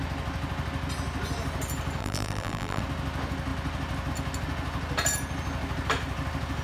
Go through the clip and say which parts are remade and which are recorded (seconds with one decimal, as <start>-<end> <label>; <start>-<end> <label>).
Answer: 0.0-2.0 recorded; 2.0-2.8 remade; 2.8-6.6 recorded